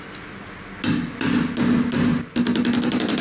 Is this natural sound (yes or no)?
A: yes